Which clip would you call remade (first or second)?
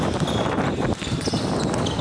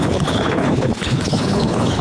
second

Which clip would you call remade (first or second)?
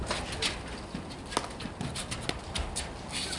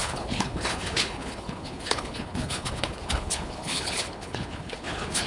second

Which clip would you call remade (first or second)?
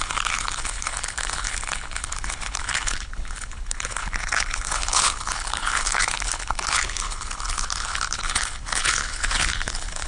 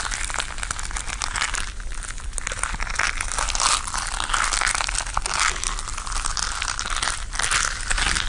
first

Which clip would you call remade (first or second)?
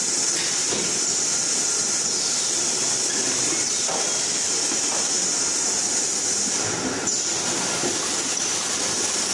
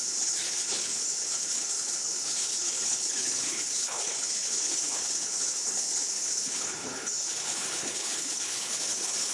second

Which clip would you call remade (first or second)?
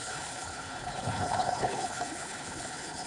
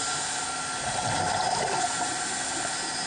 first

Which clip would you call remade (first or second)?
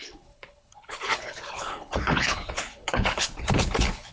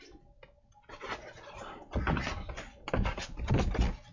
first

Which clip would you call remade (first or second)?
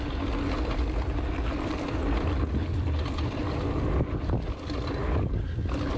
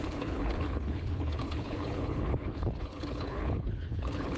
second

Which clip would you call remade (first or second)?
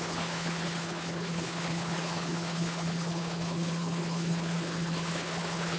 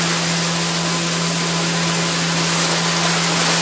first